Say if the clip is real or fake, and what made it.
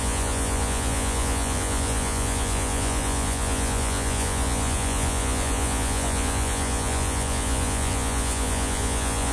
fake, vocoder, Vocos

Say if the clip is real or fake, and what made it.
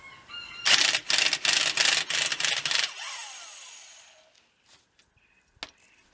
real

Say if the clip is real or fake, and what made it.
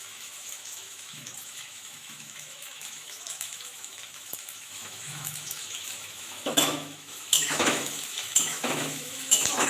fake, autoencoder, DAC-VAE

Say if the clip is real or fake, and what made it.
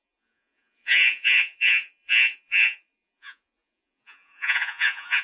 fake, vocoder, Vocos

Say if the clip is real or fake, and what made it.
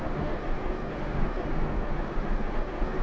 fake, autoencoder, DAC-VAE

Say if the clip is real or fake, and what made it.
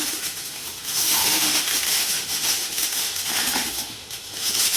fake, autoencoder, DAC-VAE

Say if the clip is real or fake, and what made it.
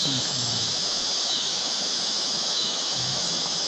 fake, autoencoder, DAC-VAE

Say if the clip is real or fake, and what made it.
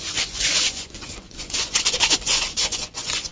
fake, vocoder, Vocos